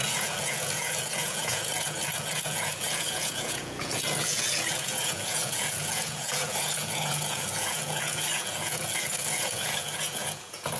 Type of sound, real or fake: fake